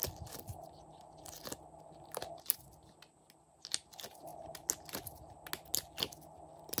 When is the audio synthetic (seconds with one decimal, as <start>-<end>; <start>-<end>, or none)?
none